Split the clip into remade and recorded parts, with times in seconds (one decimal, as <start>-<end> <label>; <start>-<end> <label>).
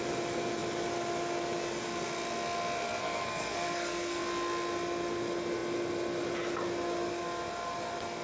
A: 0.0-3.0 recorded; 3.0-4.2 remade; 4.2-8.2 recorded